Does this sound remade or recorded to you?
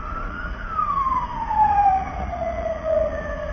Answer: remade